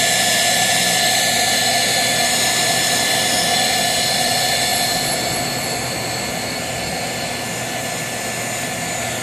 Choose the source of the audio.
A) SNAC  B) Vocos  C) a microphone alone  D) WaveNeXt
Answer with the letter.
C